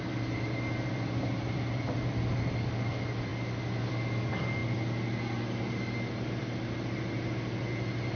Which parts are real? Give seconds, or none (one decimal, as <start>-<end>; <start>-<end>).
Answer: 3.3-3.9; 4.6-8.2